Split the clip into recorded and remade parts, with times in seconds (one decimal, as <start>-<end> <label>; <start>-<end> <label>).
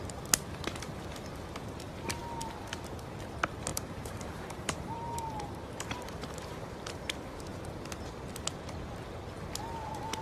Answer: 0.0-3.7 recorded; 3.7-7.0 remade; 7.0-10.2 recorded